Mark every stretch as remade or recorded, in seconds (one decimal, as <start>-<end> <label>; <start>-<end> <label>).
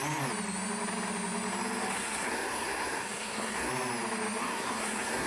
0.0-1.9 recorded; 1.9-3.7 remade; 3.7-4.4 recorded; 4.4-5.3 remade